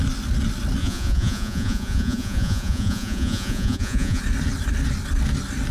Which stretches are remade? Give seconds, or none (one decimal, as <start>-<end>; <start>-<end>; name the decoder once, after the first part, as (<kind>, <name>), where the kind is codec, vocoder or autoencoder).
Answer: 0.8-4.2 (vocoder, Vocos)